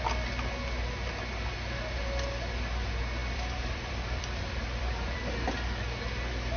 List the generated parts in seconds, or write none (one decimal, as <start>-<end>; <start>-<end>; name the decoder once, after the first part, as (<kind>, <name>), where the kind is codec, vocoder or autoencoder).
3.2-5.2 (vocoder, BigVGAN v2)